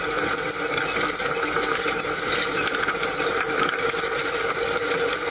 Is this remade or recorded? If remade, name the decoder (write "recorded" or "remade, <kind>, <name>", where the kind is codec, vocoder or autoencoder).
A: recorded